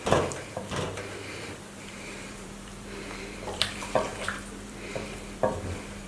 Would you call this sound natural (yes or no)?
no